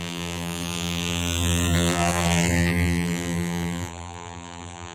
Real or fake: fake